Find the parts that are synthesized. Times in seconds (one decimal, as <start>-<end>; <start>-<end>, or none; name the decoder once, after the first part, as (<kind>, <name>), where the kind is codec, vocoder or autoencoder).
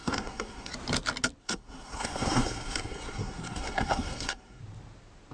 0.0-0.7 (codec, SNAC); 1.4-4.6